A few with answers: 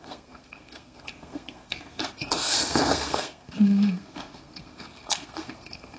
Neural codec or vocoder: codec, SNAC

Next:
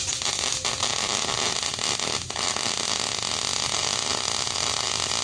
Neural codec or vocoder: none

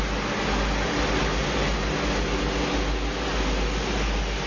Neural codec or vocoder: none